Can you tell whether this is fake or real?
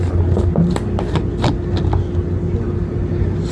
real